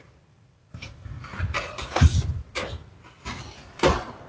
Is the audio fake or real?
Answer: real